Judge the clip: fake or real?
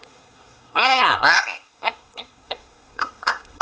fake